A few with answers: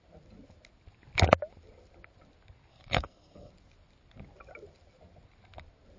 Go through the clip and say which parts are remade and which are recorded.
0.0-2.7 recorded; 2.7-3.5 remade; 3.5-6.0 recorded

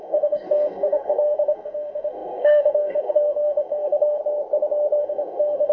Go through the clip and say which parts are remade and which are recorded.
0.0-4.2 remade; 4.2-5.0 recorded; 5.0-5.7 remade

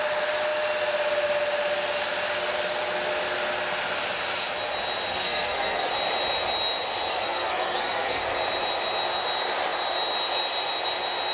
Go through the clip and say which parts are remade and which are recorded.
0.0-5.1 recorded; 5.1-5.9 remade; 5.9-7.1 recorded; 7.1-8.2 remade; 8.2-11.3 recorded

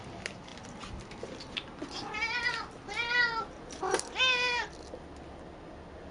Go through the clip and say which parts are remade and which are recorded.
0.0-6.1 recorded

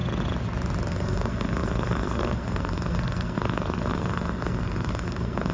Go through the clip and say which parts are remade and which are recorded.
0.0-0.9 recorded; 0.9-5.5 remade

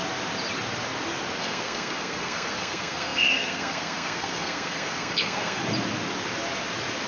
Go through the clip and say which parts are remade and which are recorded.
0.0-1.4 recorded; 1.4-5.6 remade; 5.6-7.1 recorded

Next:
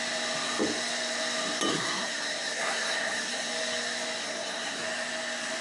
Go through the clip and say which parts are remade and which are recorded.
0.0-1.7 recorded; 1.7-3.5 remade; 3.5-4.2 recorded; 4.2-4.8 remade; 4.8-5.6 recorded